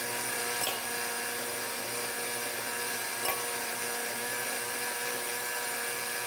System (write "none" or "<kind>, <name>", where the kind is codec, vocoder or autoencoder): none